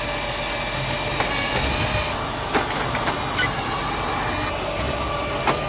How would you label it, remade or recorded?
recorded